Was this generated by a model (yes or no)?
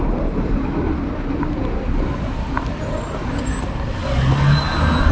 no